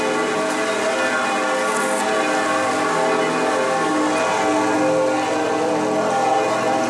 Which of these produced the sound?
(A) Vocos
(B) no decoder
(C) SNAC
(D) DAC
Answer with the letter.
B